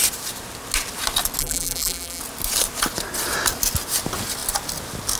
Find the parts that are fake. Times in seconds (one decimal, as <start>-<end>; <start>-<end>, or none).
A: 1.4-2.2